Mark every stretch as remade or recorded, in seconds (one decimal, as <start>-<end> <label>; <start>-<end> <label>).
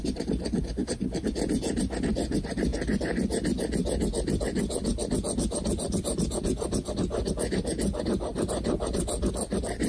0.0-9.9 recorded